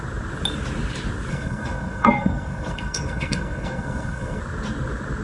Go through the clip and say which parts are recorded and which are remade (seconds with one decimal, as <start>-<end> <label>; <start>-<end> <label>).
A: 0.0-1.3 recorded; 1.3-4.4 remade; 4.4-5.2 recorded